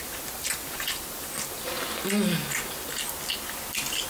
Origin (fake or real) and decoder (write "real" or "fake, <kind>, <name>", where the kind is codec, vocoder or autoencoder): real